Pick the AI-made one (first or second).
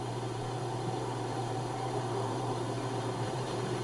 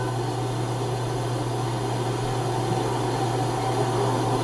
first